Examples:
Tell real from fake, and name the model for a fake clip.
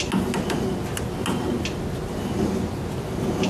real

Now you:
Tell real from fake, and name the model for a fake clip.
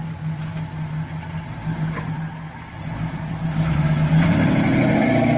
real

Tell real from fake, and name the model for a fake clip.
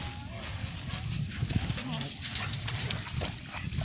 real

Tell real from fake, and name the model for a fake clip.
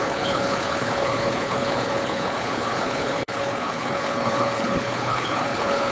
fake, codec, HILCodec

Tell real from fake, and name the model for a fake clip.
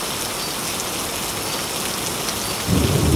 real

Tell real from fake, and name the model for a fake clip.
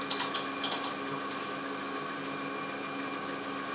real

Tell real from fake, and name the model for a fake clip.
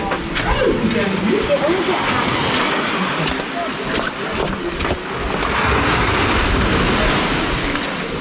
real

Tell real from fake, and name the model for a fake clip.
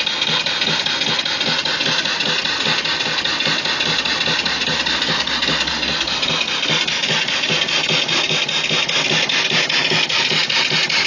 real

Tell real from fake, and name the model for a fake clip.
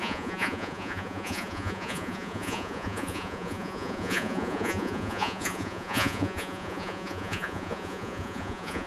fake, vocoder, Vocos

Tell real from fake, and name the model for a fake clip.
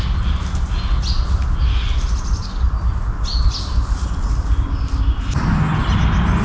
real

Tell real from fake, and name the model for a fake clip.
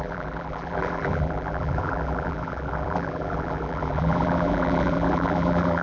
fake, vocoder, BigVGAN v2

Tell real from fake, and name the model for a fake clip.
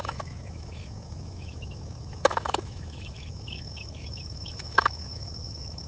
fake, autoencoder, DAC-VAE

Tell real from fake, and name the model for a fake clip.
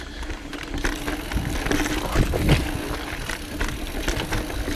real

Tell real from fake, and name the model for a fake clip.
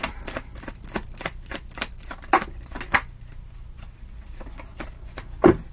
real